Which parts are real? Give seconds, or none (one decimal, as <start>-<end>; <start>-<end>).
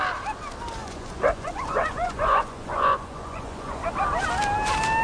0.0-0.8; 3.8-5.0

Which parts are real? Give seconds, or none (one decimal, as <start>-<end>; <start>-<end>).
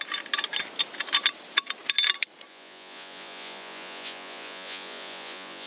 0.0-2.5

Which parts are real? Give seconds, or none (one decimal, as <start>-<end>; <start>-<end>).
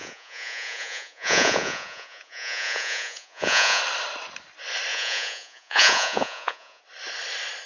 3.8-4.9; 6.8-7.7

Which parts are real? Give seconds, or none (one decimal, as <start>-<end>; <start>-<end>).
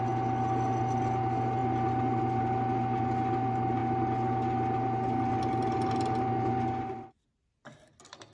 0.0-8.3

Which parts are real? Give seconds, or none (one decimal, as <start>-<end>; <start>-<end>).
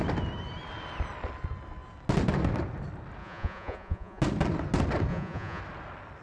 0.0-3.2; 4.2-5.1; 5.6-6.2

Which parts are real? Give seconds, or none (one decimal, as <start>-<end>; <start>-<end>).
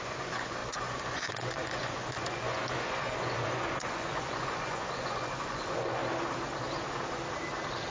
6.0-7.9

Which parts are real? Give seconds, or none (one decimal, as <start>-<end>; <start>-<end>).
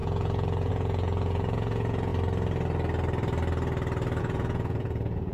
2.1-4.2